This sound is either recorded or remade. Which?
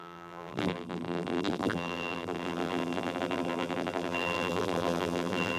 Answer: remade